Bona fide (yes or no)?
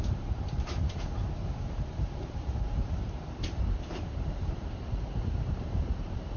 no